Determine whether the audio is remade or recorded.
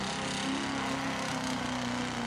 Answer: recorded